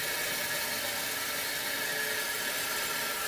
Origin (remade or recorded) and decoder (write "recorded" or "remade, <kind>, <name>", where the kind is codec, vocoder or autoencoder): recorded